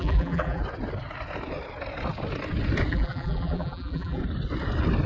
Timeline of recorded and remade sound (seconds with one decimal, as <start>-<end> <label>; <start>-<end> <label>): 0.0-0.6 remade; 0.6-2.9 recorded; 2.9-4.2 remade; 4.2-5.1 recorded